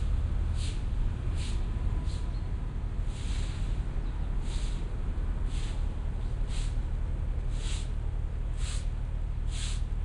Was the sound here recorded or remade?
recorded